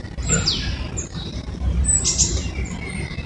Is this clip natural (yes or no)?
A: yes